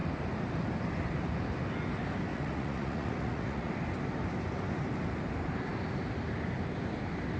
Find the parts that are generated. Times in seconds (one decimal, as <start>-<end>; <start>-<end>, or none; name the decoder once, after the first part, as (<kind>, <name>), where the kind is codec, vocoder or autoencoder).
2.3-3.7 (vocoder, Vocos)